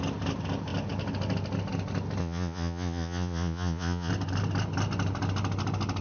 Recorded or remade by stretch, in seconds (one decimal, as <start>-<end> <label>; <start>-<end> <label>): 0.0-2.2 recorded; 2.2-4.1 remade; 4.1-6.0 recorded